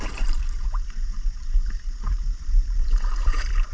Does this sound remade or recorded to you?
remade